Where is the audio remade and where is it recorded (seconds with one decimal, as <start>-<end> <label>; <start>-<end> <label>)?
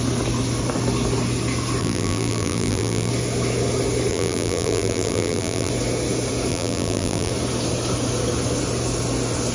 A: 0.0-1.8 recorded; 1.8-3.1 remade; 3.1-4.1 recorded; 4.1-5.7 remade; 5.7-6.5 recorded; 6.5-7.3 remade; 7.3-9.5 recorded